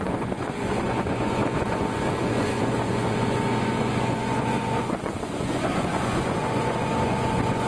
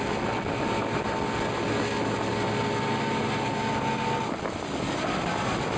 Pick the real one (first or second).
second